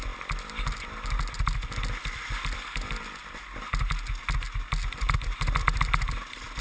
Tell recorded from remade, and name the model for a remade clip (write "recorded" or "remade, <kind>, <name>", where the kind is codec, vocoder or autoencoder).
recorded